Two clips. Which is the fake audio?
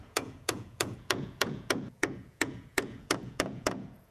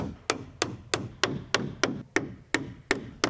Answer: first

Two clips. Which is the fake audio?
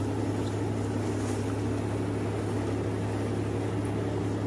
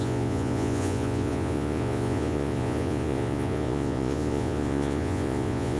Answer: second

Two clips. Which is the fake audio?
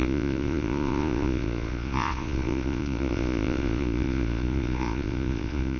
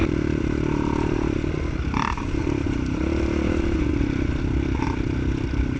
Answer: first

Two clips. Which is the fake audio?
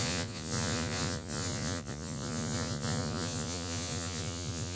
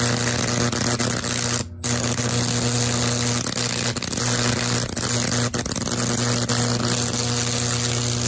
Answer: first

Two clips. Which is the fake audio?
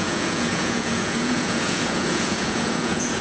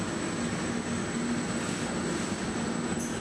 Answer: first